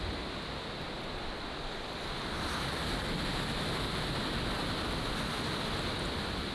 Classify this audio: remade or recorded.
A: recorded